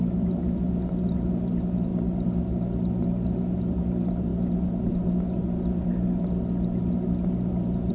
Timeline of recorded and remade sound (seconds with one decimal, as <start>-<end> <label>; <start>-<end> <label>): 0.0-7.9 recorded